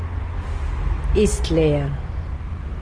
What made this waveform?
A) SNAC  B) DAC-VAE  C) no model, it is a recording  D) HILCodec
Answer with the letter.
C